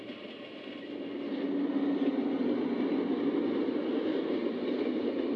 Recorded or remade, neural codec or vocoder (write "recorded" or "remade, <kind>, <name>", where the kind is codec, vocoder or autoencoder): recorded